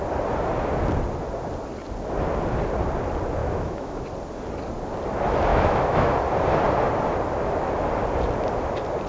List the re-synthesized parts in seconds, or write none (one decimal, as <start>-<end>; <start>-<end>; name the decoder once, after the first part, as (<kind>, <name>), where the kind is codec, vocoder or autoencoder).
3.4-4.0 (autoencoder, DAC-VAE); 5.5-6.1